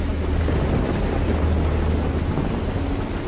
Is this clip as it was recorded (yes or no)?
yes